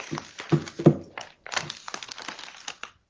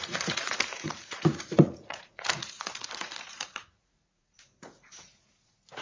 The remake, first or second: second